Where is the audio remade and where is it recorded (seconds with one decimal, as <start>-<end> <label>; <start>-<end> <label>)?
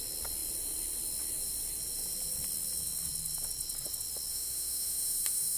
0.0-4.3 recorded; 4.3-5.6 remade